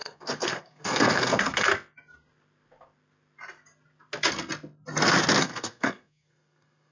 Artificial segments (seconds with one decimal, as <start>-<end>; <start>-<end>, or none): 0.0-1.7; 5.4-6.9